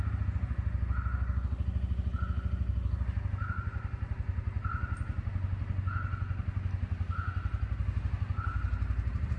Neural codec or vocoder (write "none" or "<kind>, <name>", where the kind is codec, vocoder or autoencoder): none